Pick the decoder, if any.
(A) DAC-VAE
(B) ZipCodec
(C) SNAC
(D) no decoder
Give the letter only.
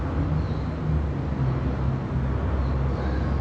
D